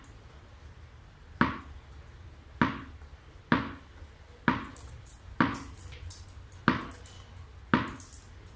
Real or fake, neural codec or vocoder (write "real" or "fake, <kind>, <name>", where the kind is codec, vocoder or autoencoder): real